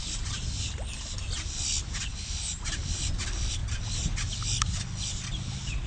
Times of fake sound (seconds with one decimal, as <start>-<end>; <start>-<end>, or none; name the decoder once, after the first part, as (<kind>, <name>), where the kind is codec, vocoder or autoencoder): none